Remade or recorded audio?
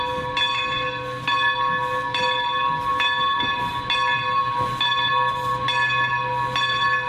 recorded